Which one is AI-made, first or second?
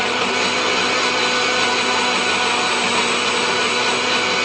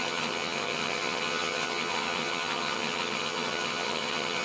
second